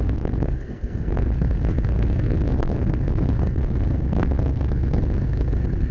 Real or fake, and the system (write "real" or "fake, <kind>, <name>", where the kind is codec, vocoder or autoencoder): fake, codec, SNAC